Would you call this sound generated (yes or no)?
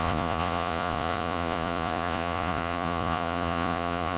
yes